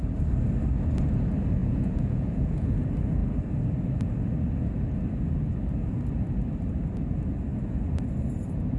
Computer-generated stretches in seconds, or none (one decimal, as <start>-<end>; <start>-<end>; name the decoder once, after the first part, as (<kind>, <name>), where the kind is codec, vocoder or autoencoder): 1.6-2.7 (vocoder, Vocos)

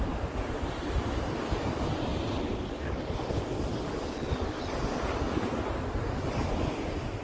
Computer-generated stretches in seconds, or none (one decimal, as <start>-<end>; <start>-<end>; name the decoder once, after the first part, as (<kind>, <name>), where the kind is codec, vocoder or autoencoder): none

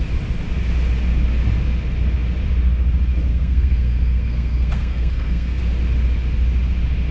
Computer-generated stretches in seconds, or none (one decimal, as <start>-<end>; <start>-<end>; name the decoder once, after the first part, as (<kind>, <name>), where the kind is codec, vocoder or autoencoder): 3.3-5.6 (codec, SNAC)

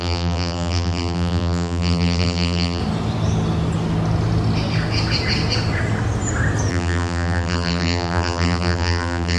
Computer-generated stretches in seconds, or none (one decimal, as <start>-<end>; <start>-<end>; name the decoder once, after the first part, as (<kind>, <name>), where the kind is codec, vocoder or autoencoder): 0.0-2.8 (vocoder, BigVGAN v2); 6.7-9.4